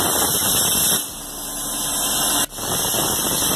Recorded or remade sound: recorded